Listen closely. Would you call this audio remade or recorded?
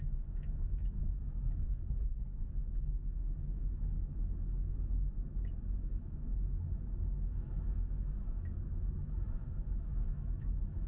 remade